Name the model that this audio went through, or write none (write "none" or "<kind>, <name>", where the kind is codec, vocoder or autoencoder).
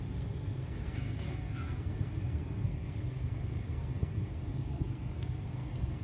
codec, SNAC